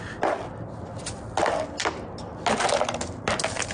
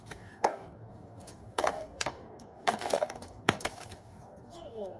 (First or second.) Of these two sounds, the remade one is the second